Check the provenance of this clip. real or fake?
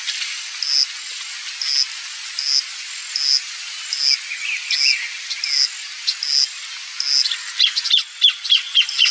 real